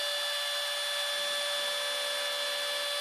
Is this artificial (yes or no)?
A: no